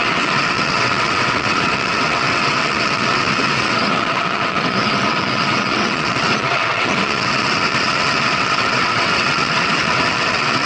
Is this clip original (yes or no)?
no